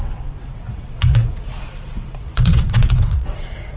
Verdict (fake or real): fake